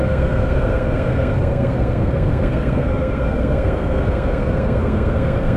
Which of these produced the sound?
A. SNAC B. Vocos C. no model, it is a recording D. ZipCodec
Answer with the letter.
A